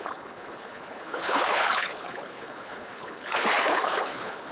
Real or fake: fake